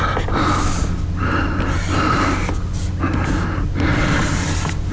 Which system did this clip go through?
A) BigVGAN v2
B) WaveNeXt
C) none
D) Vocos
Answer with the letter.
C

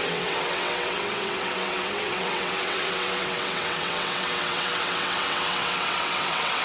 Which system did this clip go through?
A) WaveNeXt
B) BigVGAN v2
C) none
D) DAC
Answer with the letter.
A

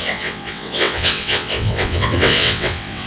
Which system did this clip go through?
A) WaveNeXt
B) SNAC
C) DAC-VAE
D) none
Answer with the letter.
A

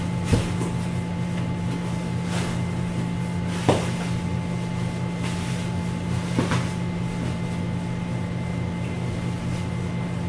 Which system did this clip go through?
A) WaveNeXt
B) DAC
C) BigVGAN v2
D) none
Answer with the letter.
D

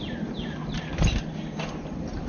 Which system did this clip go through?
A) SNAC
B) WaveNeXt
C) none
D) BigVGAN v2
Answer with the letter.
C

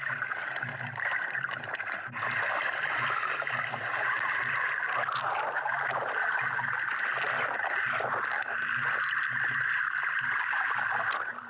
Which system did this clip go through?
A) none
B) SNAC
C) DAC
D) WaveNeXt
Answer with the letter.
A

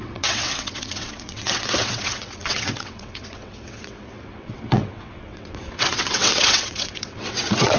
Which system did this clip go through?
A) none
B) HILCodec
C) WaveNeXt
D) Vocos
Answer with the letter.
C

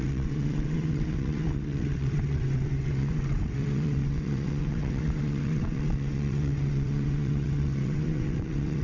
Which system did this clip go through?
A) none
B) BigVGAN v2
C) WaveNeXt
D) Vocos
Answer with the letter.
C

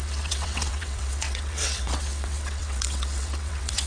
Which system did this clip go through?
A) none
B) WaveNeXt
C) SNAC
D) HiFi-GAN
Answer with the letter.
B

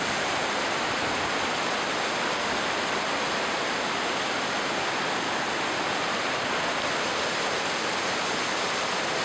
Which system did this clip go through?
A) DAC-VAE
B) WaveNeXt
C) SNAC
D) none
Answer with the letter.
D